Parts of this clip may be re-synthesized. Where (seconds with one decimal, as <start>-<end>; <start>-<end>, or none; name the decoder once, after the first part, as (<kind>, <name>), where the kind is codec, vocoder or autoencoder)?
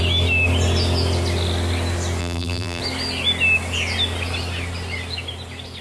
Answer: 2.2-2.8 (vocoder, BigVGAN v2)